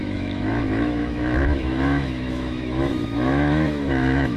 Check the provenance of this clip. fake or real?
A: fake